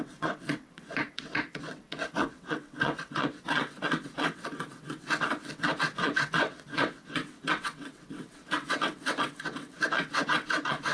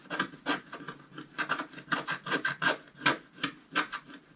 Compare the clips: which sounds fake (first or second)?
first